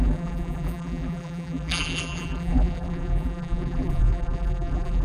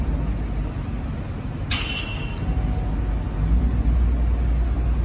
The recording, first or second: second